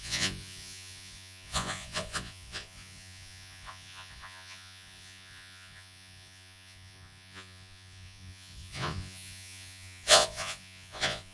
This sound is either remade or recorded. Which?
remade